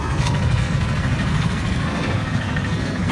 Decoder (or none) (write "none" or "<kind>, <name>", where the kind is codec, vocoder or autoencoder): codec, SNAC